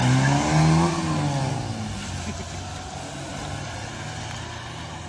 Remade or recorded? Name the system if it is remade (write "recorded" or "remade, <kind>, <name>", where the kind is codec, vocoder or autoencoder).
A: recorded